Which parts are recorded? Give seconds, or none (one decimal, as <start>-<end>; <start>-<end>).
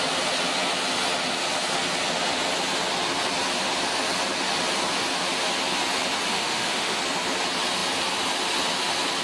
0.0-6.3; 7.0-9.2